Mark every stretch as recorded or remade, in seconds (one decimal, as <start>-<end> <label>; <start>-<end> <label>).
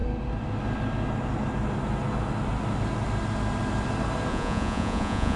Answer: 0.0-4.3 recorded; 4.3-5.4 remade